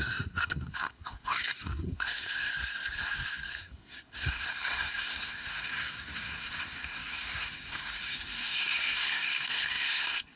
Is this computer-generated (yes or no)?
yes